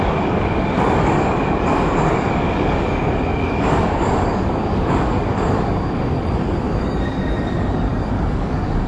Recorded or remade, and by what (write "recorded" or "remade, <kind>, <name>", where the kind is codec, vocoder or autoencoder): remade, codec, DAC